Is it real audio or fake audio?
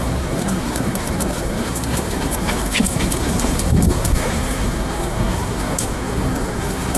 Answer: fake